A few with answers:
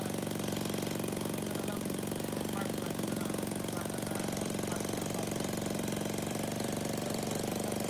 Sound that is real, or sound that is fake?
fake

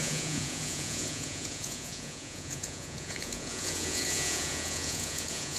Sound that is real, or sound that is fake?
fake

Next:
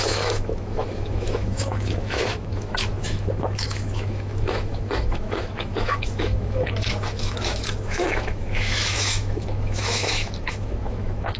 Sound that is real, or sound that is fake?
fake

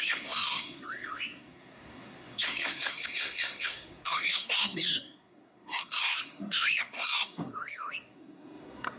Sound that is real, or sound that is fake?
fake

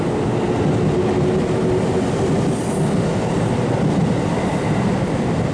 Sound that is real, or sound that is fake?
real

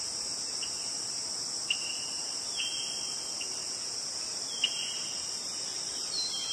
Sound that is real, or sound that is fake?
real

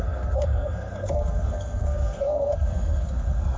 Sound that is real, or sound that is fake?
fake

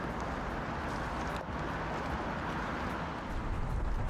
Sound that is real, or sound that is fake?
real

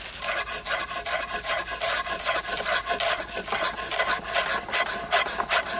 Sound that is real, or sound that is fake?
real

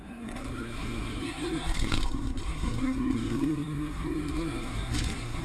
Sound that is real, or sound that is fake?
fake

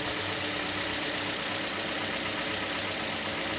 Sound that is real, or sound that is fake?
real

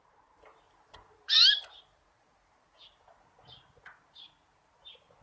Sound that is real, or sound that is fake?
real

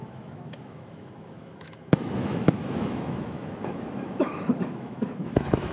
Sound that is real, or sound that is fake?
fake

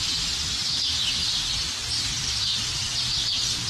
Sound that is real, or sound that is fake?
fake